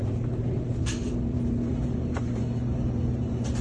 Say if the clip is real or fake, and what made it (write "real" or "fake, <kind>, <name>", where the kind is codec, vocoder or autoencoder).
fake, vocoder, BigVGAN v2